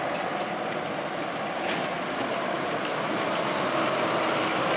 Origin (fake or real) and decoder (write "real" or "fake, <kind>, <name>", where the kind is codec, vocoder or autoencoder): real